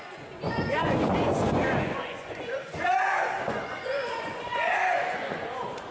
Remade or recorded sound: remade